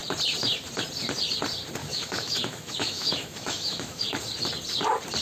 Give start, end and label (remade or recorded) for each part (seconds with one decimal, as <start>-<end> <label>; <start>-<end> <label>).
0.0-1.8 recorded; 1.8-4.0 remade; 4.0-5.2 recorded